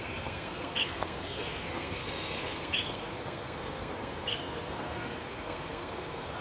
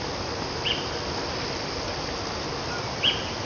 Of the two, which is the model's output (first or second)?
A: first